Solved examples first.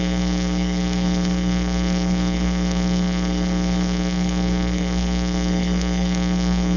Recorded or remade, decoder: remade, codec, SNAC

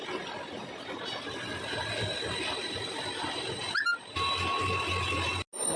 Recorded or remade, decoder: recorded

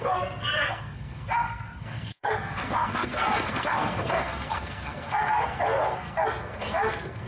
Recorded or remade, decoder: remade, codec, SNAC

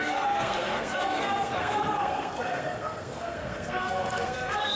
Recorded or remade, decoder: remade, codec, SNAC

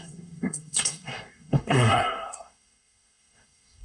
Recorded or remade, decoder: remade, codec, SNAC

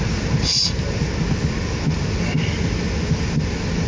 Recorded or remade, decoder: recorded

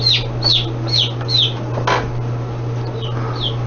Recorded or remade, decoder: recorded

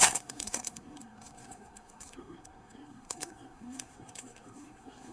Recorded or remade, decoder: remade, codec, SNAC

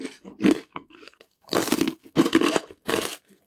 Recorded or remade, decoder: remade, codec, SNAC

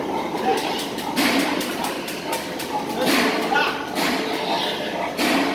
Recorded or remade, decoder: recorded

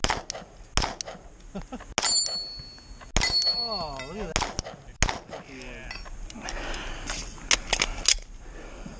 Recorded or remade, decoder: recorded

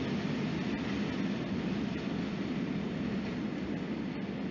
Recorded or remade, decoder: recorded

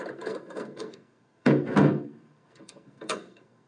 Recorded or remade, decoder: remade, codec, SNAC